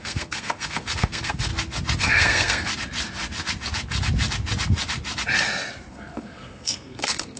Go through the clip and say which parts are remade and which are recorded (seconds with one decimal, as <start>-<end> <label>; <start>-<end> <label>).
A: 0.0-1.5 remade; 1.5-2.0 recorded; 2.0-2.7 remade; 2.7-5.9 recorded; 5.9-7.4 remade